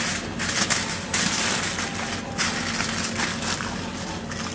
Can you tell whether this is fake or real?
real